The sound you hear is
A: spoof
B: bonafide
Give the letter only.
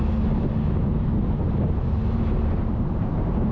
B